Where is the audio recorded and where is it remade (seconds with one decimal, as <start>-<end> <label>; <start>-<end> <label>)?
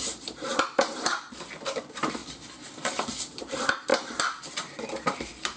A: 0.0-2.2 remade; 2.2-3.2 recorded; 3.2-3.9 remade; 3.9-4.5 recorded; 4.5-5.6 remade